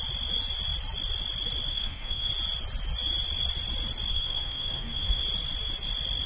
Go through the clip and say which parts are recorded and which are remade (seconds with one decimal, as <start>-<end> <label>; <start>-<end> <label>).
0.0-1.7 recorded; 1.7-2.3 remade; 2.3-4.1 recorded; 4.1-5.2 remade; 5.2-6.3 recorded

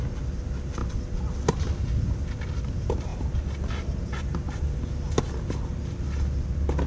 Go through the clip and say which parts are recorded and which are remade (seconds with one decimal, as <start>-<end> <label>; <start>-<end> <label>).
0.0-6.9 recorded

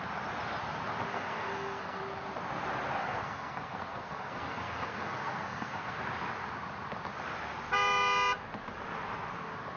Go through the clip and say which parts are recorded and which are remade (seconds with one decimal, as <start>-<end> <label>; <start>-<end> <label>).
0.0-1.1 recorded; 1.1-2.0 remade; 2.0-3.0 recorded; 3.0-6.0 remade; 6.0-9.8 recorded

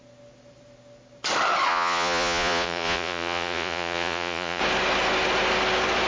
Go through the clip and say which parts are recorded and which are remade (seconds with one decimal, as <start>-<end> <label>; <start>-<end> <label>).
0.0-1.7 recorded; 1.7-4.6 remade; 4.6-6.1 recorded